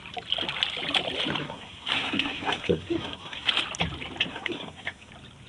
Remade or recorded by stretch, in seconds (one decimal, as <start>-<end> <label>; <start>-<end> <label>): 0.0-1.4 recorded; 1.4-3.5 remade; 3.5-4.3 recorded; 4.3-5.1 remade; 5.1-5.5 recorded